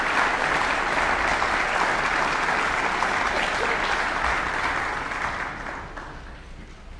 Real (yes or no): yes